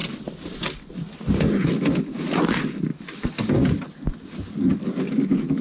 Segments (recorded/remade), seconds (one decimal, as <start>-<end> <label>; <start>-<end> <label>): 0.0-5.6 recorded